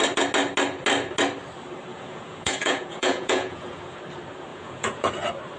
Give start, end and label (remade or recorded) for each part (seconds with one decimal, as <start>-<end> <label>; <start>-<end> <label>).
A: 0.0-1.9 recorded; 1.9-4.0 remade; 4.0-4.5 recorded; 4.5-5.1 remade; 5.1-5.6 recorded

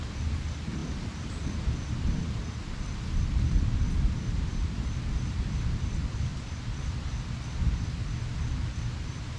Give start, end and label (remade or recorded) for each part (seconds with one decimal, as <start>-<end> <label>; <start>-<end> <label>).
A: 0.0-9.4 recorded

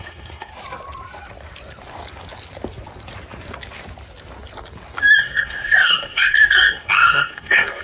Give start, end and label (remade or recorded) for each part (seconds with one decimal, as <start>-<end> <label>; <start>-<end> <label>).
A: 0.0-0.5 remade; 0.5-5.2 recorded; 5.2-7.8 remade

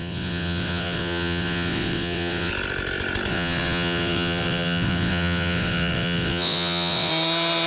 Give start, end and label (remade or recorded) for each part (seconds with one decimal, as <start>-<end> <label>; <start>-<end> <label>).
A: 0.0-2.5 remade; 2.5-3.3 recorded; 3.3-7.1 remade; 7.1-7.7 recorded

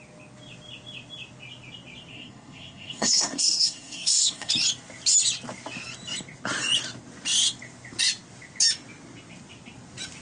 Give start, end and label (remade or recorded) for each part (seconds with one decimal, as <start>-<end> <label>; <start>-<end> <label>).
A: 0.0-2.1 recorded; 2.1-4.5 remade; 4.5-10.2 recorded

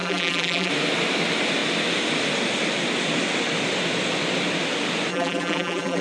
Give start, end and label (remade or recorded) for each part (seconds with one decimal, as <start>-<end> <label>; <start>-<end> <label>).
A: 0.0-0.7 remade; 0.7-5.1 recorded; 5.1-6.0 remade

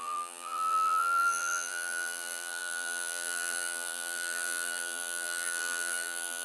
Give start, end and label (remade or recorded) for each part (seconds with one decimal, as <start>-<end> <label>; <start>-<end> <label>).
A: 0.0-6.4 remade